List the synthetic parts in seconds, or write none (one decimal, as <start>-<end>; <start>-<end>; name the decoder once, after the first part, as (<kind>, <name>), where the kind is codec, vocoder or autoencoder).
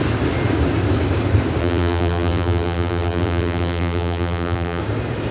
1.6-4.8 (vocoder, BigVGAN v2)